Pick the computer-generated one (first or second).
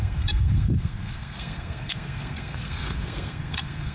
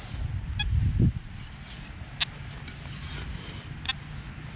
first